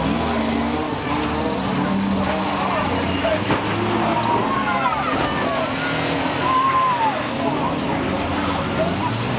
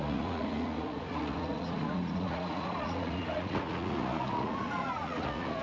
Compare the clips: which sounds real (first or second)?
first